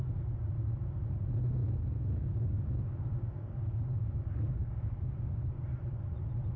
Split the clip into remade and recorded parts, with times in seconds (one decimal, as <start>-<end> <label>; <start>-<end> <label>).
0.0-1.6 recorded; 1.6-5.6 remade; 5.6-6.6 recorded